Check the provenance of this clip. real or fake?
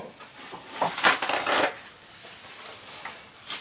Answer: real